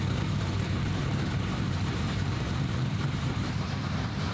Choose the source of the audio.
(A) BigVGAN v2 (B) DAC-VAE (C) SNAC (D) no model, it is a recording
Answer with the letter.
A